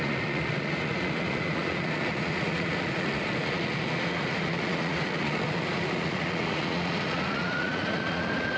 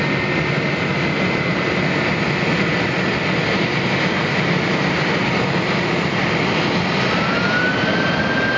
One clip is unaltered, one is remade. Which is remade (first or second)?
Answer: first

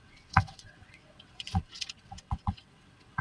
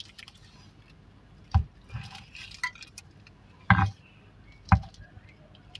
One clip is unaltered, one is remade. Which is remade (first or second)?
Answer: first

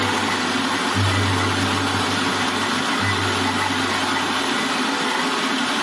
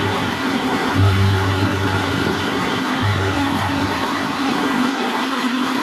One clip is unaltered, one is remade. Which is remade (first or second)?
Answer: second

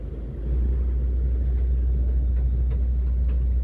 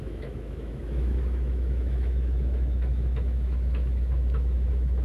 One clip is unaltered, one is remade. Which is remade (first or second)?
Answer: second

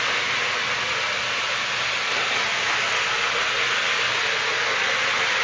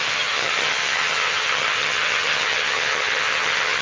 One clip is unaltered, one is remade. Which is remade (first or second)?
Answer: second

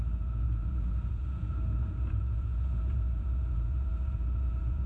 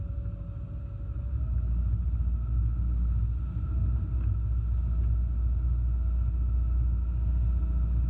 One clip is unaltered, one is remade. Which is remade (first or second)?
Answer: first